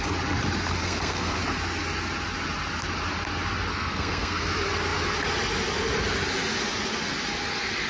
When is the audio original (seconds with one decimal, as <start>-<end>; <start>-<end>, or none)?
0.0-0.8; 1.4-3.7; 4.4-7.9